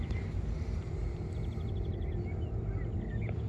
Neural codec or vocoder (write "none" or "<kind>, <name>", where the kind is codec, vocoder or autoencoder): none